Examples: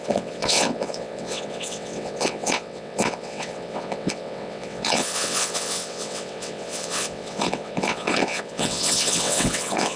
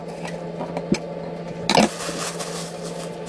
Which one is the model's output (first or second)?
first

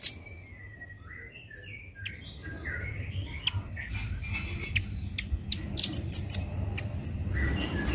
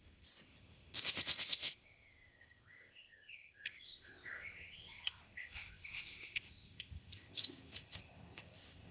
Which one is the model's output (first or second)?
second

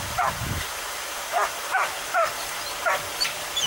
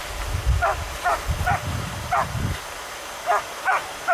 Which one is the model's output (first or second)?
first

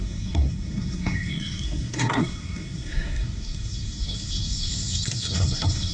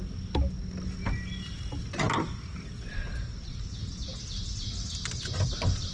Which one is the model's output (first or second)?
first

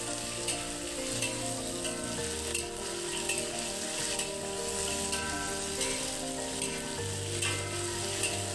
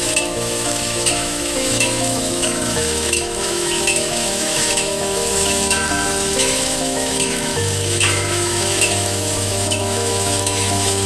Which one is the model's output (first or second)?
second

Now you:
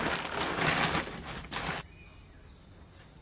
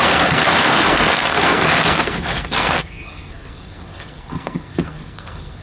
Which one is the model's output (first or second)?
second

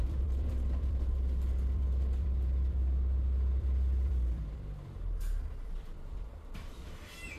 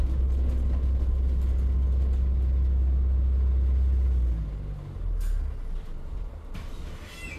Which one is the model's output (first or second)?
first